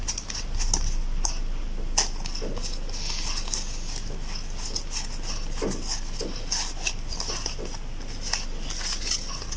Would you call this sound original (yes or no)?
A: yes